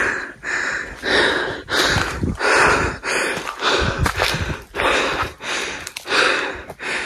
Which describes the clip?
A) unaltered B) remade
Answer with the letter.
A